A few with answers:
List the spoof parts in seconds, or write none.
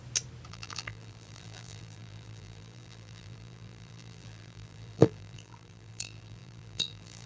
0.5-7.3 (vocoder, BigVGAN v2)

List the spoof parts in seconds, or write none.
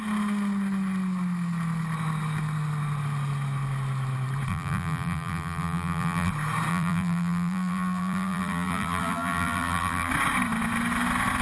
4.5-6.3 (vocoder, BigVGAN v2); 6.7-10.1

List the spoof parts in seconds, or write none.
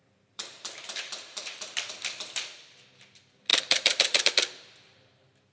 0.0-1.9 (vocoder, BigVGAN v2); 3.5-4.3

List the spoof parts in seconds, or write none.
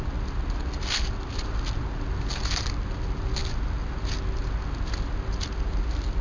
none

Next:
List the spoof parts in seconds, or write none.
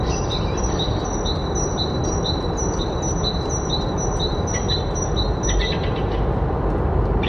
none